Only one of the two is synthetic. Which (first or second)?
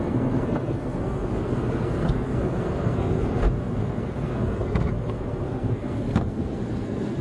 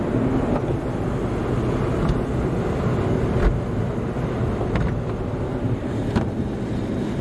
first